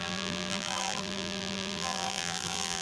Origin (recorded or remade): remade